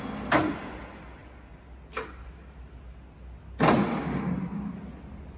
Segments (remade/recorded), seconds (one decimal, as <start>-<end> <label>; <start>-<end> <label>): 0.0-5.4 recorded